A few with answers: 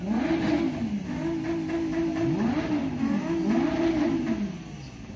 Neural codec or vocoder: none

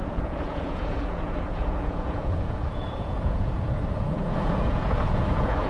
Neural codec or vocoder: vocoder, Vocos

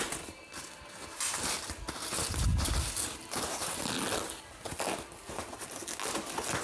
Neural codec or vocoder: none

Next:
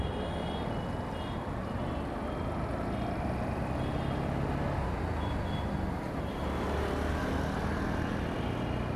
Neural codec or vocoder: none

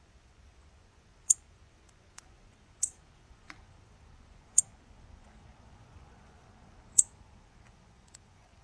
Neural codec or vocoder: vocoder, Vocos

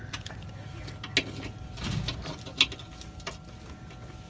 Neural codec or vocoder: none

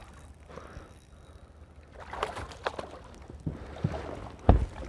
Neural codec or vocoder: none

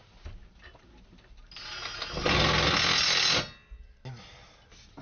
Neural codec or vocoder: none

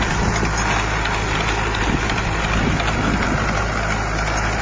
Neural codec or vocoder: none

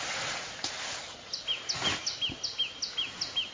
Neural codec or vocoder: none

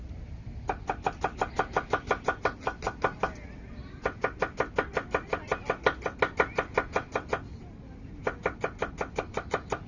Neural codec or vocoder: none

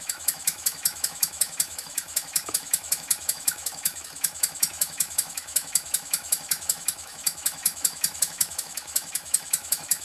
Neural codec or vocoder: autoencoder, DAC-VAE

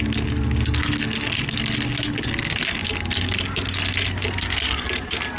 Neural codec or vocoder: none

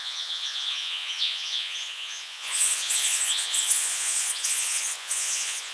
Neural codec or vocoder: vocoder, Vocos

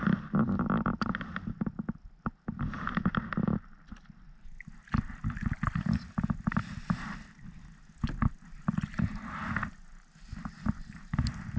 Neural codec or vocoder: none